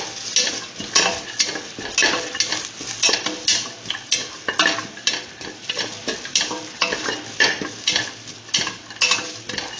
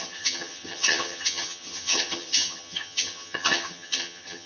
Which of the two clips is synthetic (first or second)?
second